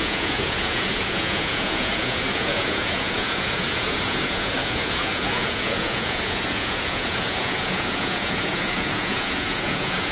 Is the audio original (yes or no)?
no